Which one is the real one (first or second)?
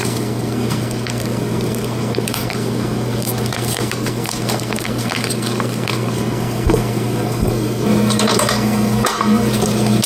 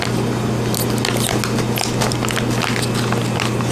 second